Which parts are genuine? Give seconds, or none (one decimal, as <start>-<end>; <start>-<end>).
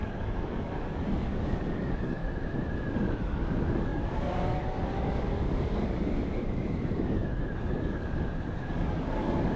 2.2-3.1